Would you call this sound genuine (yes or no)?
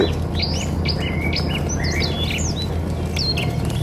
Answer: yes